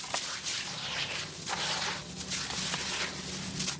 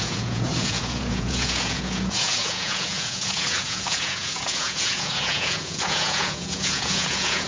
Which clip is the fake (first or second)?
second